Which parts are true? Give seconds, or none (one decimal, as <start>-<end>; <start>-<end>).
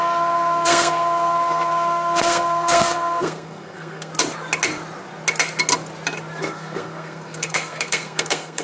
4.1-6.4